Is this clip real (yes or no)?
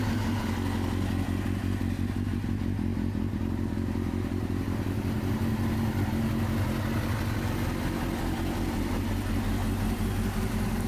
yes